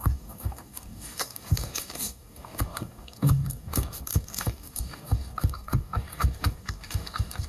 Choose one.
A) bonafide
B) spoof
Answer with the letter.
B